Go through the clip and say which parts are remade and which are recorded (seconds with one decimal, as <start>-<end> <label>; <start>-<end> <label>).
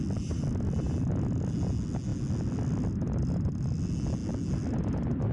0.0-5.3 recorded